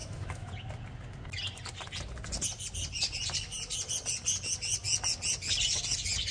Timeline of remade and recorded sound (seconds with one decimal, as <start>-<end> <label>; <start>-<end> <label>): 0.0-0.5 remade; 0.5-6.3 recorded